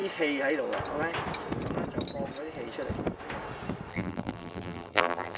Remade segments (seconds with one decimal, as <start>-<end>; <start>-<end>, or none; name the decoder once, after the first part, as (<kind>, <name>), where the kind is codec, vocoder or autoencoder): 3.9-5.4 (vocoder, BigVGAN v2)